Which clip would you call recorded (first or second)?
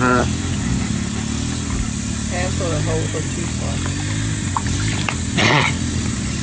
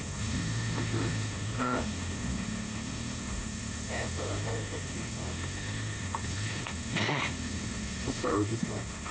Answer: first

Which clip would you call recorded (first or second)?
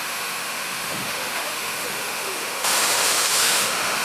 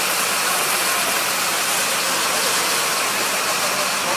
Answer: second